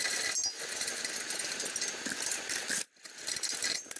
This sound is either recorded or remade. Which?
recorded